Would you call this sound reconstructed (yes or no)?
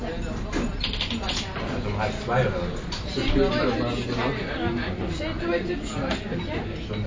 no